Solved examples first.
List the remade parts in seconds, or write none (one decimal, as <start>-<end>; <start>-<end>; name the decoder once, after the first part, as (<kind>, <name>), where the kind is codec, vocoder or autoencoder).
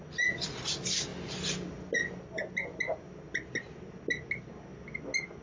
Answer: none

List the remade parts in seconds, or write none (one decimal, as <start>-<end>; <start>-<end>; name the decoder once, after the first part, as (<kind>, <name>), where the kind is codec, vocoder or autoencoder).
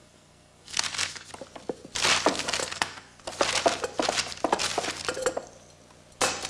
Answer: 0.0-1.3 (codec, SNAC); 2.6-3.2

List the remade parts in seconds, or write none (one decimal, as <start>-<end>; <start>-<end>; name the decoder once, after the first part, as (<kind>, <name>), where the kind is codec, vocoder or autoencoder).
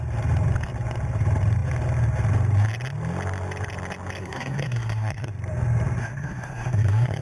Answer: 4.2-5.3 (codec, SNAC); 6.0-7.2